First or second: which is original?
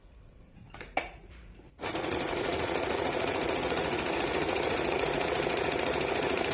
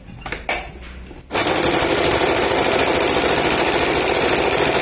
second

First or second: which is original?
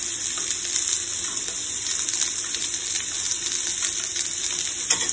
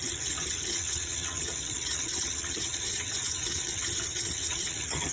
first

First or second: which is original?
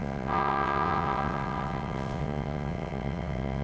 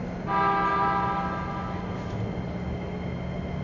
second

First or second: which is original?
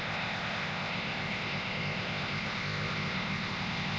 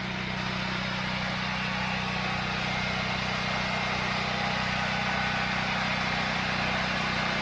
second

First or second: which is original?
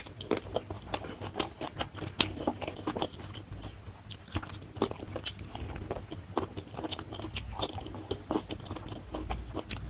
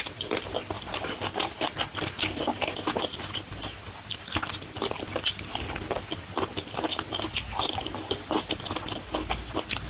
first